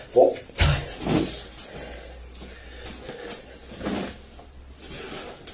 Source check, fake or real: real